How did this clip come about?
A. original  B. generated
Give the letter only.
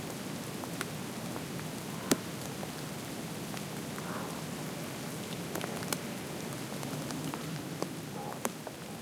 A